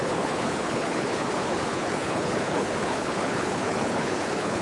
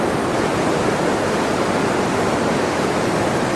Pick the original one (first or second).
second